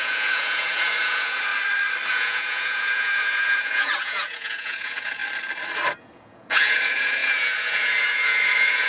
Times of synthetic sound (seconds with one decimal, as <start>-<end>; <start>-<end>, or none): 0.0-1.5; 2.1-5.2; 6.0-8.9